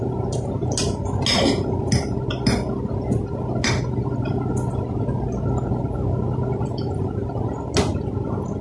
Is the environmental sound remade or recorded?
recorded